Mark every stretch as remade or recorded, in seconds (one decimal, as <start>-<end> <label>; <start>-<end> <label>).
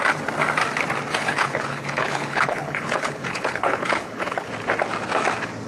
0.0-1.1 recorded; 1.1-4.5 remade; 4.5-5.7 recorded